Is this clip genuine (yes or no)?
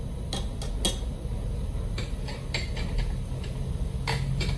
yes